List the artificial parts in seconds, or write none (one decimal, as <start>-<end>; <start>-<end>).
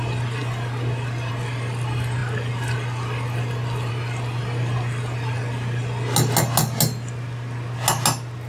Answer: none